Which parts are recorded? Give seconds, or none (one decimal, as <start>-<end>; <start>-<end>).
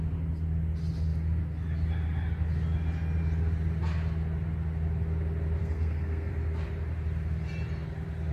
0.0-5.6; 6.3-8.3